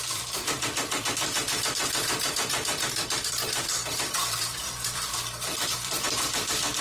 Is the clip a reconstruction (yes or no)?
yes